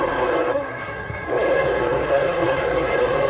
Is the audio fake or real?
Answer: fake